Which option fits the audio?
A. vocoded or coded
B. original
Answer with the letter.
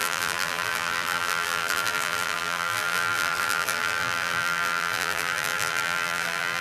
A